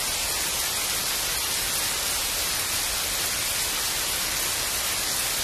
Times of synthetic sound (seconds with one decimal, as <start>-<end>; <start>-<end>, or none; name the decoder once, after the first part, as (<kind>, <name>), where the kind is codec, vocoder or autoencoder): none

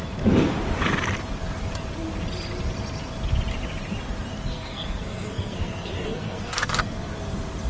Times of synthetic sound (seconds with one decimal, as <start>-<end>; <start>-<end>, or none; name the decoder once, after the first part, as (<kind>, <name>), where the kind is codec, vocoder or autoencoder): 4.5-7.1 (codec, SNAC)

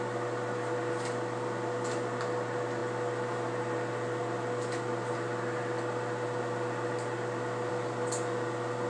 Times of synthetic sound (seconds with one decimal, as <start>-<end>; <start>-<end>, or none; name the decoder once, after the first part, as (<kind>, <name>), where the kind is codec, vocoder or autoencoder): none

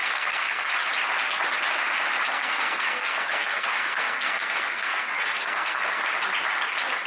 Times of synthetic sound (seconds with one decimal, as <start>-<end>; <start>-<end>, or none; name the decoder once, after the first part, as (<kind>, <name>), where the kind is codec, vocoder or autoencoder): 0.0-0.7 (codec, SNAC); 2.3-6.0

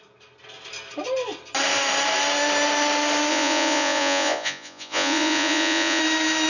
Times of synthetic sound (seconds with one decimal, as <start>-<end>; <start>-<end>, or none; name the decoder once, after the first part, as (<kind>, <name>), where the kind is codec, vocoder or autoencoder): 3.3-6.0 (vocoder, Vocos)

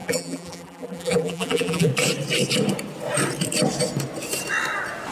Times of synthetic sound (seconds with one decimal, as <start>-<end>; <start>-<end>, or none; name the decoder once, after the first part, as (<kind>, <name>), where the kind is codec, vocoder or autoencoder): 0.0-1.9 (vocoder, BigVGAN v2)

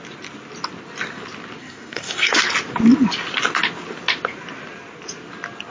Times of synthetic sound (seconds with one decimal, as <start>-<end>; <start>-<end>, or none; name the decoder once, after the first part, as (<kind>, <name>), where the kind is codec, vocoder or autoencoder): 1.6-2.4 (codec, SNAC)